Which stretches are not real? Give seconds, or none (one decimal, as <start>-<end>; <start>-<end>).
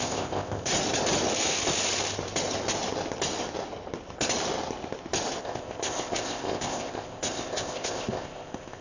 0.0-0.7; 5.4-8.8